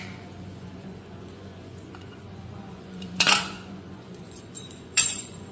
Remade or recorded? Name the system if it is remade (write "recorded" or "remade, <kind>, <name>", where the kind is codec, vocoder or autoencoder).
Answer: remade, vocoder, Vocos